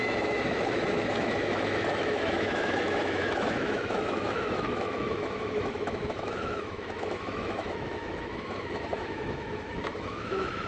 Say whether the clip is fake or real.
fake